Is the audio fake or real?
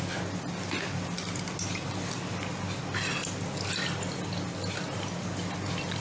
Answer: real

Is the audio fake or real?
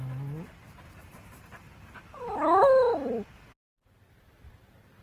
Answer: real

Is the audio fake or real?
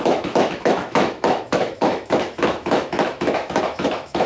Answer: fake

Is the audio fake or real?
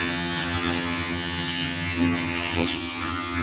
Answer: fake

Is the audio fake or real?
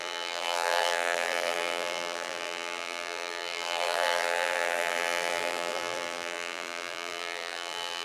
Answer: fake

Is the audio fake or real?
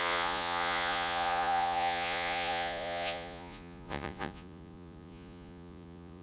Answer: fake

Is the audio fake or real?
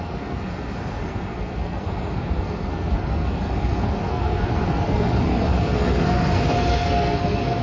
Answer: fake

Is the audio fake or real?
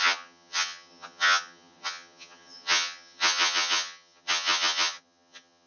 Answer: fake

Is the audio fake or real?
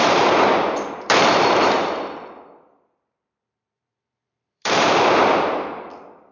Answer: fake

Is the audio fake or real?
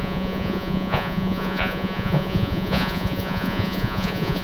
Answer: fake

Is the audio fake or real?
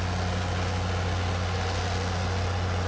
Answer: real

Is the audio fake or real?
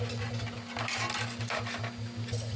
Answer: real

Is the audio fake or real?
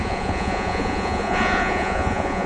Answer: fake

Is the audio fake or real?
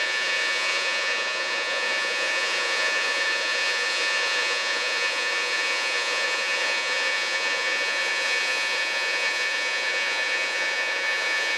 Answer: fake